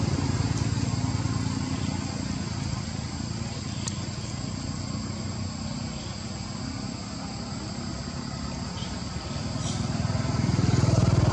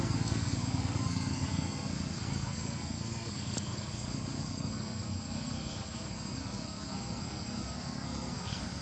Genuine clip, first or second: first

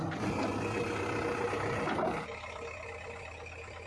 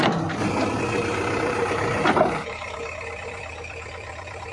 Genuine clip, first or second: first